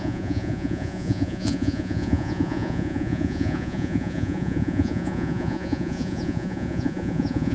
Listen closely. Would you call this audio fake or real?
fake